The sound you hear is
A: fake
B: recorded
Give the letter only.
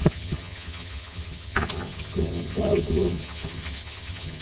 A